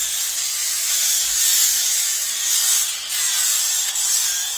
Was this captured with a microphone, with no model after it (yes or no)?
no